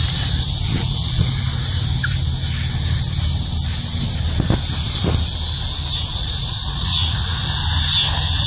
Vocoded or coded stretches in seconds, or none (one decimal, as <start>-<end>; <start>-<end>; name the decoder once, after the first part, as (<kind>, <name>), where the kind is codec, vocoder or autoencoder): 0.8-1.3 (vocoder, Vocos); 6.1-7.4